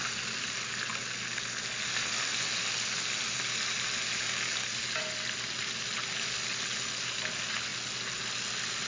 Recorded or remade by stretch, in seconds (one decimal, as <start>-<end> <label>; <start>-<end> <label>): 0.0-8.9 recorded